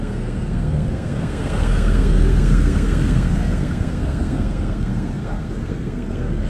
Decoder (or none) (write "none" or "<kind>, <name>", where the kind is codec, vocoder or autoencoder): codec, SNAC